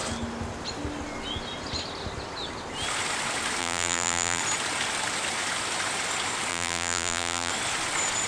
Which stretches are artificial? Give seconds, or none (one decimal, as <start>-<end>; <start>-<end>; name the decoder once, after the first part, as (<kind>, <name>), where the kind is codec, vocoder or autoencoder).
3.6-4.4 (vocoder, BigVGAN v2); 6.5-7.5